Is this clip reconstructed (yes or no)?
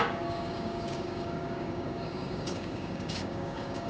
yes